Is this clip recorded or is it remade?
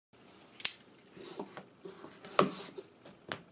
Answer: recorded